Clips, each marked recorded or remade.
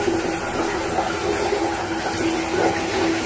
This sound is recorded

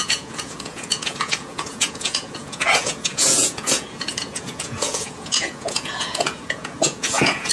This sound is remade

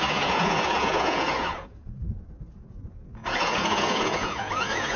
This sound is remade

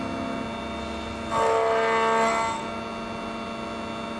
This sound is recorded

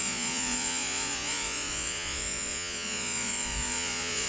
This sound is remade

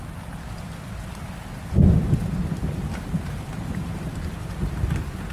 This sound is recorded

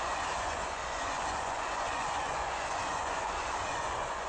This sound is remade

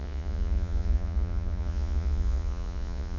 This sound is remade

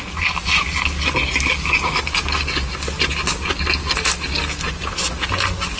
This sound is recorded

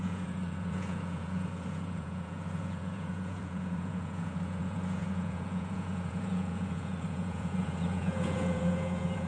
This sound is remade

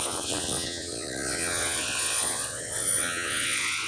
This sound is remade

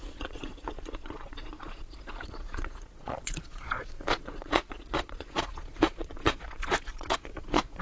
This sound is remade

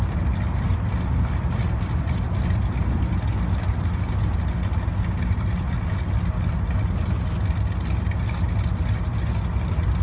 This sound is recorded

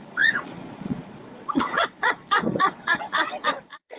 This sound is remade